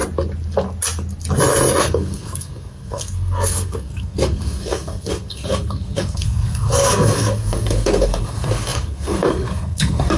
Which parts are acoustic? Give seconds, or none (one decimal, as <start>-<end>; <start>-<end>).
0.0-1.8

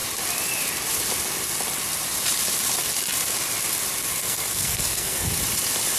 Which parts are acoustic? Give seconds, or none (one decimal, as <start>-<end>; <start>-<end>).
0.0-4.2; 5.3-6.0

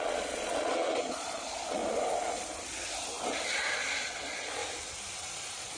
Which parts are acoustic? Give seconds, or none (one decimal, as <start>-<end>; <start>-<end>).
1.8-3.7; 4.6-5.2

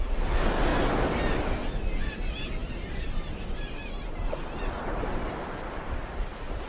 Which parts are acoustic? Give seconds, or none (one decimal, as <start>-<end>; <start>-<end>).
0.0-2.6; 5.4-6.7

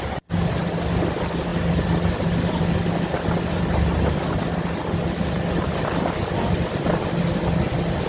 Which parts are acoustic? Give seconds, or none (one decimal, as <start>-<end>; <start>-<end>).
0.0-8.1

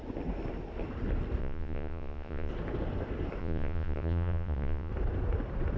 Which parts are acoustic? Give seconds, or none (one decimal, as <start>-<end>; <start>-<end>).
0.0-1.4; 2.5-3.4; 4.9-5.8

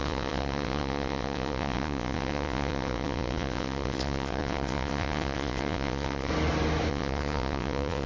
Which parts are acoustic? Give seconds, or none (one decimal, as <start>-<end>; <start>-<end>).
6.3-6.9

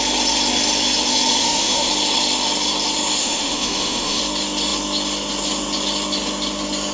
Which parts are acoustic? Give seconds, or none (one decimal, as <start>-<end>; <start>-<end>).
0.0-1.4; 1.9-3.2; 4.2-6.9